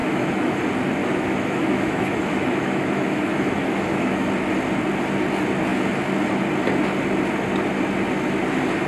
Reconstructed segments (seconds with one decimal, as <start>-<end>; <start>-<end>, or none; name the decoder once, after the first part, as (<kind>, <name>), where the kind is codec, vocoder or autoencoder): 0.0-0.6 (autoencoder, DAC-VAE); 1.0-4.3